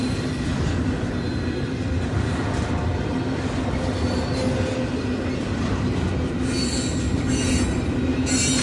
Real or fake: real